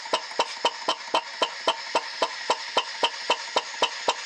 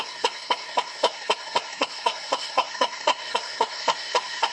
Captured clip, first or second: first